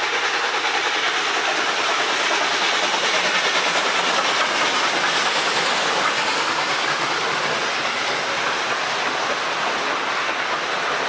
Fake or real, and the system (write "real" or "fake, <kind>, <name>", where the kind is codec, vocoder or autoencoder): real